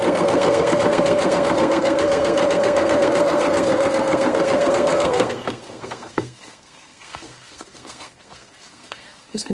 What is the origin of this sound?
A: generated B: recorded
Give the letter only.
A